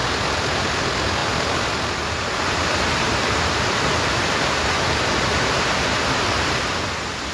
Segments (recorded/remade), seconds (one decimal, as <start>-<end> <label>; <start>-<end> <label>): 0.0-1.2 recorded; 1.2-4.6 remade; 4.6-7.3 recorded